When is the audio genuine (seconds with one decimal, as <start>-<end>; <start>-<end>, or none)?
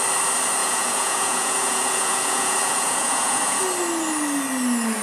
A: 0.0-0.6; 3.6-5.0